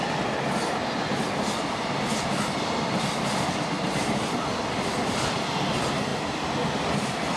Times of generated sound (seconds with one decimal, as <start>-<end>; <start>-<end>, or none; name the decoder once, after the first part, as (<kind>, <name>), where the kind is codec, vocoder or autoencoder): none